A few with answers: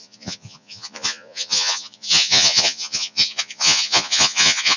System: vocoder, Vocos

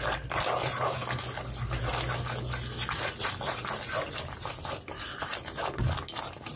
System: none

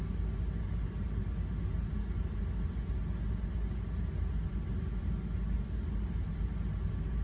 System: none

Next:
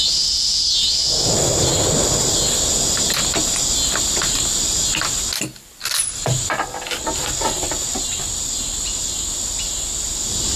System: none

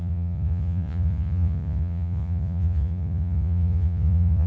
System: vocoder, Vocos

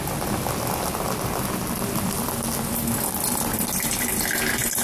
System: none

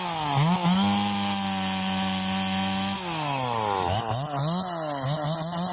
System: none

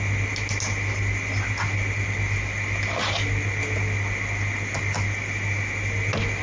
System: none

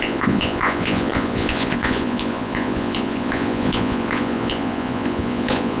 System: vocoder, Vocos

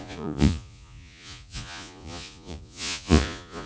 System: vocoder, Vocos